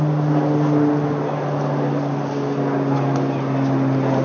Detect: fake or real real